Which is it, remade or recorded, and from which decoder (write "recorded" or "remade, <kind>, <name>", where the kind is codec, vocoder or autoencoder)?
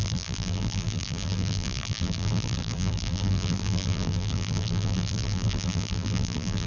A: remade, vocoder, BigVGAN v2